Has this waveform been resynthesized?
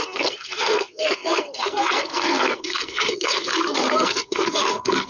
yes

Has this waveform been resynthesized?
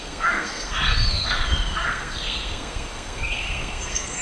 yes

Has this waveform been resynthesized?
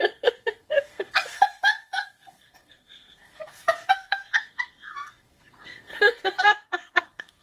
yes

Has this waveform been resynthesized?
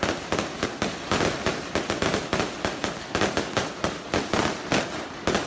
no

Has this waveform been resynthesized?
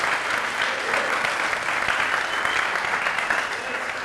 no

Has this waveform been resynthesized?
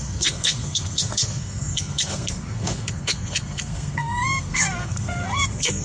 yes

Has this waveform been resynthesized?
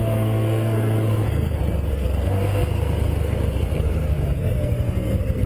yes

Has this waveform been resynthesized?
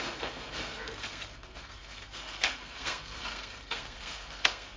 yes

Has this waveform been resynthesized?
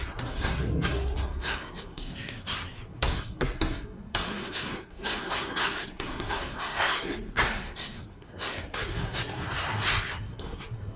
yes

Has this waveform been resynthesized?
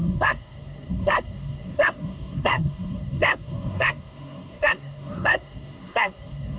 yes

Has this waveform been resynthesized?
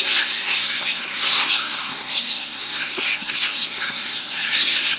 yes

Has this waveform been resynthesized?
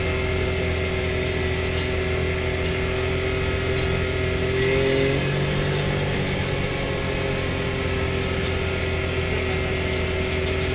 no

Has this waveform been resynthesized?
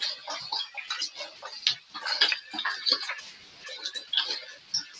no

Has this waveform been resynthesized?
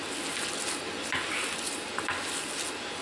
no